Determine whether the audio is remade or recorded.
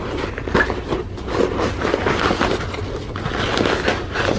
recorded